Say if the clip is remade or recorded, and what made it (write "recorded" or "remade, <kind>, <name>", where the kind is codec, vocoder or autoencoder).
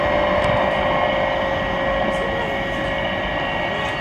recorded